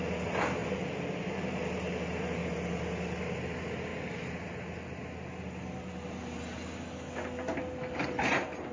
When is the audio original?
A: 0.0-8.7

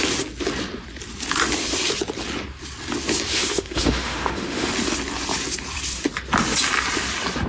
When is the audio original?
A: 0.0-3.3; 4.7-7.5

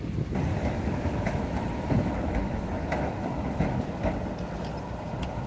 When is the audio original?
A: 0.0-0.5; 3.8-5.5